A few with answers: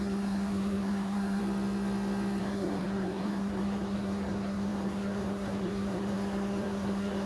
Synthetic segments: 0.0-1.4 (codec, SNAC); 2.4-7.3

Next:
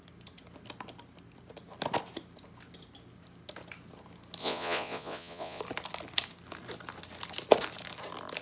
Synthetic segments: 4.4-5.6 (vocoder, Vocos)